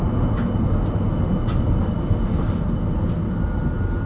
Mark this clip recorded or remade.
recorded